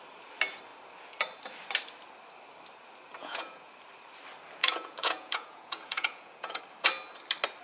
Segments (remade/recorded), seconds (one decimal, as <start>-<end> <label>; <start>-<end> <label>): 0.0-3.2 recorded; 3.2-3.7 remade; 3.7-4.6 recorded; 4.6-6.6 remade; 6.6-7.6 recorded